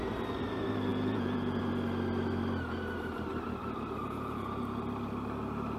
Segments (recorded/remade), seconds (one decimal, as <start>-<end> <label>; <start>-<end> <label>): 0.0-0.9 recorded; 0.9-1.6 remade; 1.6-4.0 recorded; 4.0-4.8 remade; 4.8-5.8 recorded